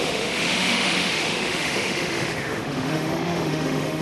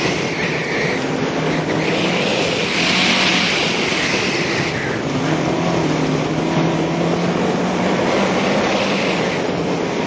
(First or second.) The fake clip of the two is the first